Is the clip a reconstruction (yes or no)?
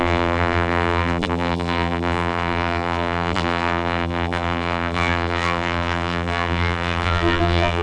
yes